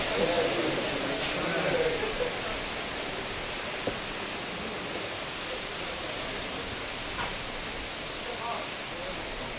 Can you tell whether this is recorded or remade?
recorded